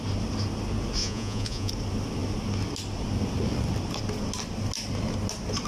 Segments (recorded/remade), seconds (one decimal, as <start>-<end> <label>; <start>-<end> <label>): 0.0-1.0 recorded; 1.0-1.7 remade; 1.7-5.7 recorded